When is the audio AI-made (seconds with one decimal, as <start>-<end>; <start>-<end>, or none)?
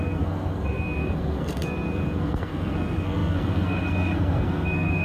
0.0-5.0